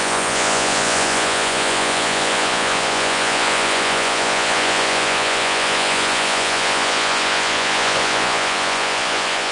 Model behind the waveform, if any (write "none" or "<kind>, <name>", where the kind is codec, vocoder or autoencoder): vocoder, Vocos